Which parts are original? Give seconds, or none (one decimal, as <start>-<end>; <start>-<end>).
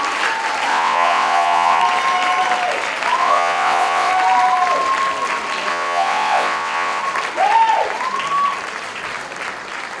0.0-0.7; 1.8-3.2; 4.1-5.7; 7.0-10.0